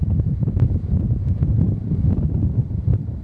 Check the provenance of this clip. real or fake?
fake